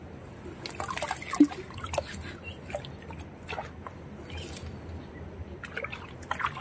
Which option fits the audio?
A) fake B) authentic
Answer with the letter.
B